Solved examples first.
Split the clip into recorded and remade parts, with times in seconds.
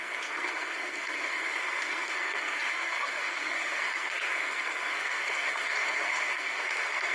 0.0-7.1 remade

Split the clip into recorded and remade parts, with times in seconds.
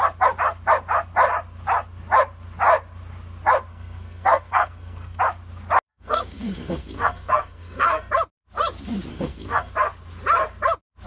0.0-3.7 recorded; 3.7-5.2 remade; 5.2-5.9 recorded; 5.9-8.1 remade; 8.1-9.1 recorded; 9.1-9.7 remade; 9.7-11.1 recorded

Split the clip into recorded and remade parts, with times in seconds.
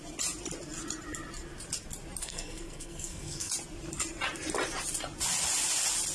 0.0-2.2 recorded; 2.2-3.5 remade; 3.5-6.1 recorded